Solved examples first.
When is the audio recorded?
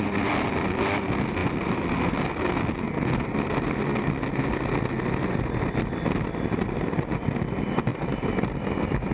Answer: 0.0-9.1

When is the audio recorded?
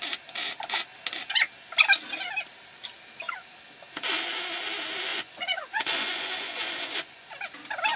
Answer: 0.0-5.1; 7.3-8.0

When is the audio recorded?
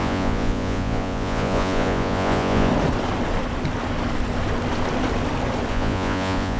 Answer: 2.7-5.7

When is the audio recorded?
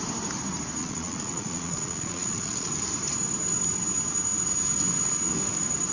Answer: 0.0-0.8; 2.7-5.9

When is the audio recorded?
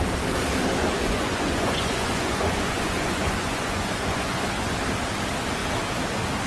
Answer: 0.0-0.8; 4.7-6.5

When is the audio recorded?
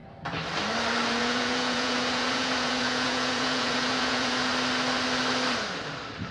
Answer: 0.0-1.2; 4.5-6.3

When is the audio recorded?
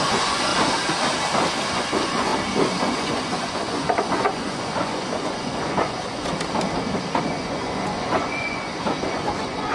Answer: 0.5-1.7; 2.3-2.8; 6.3-7.2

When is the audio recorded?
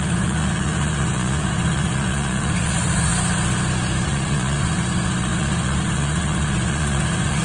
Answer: 3.1-4.0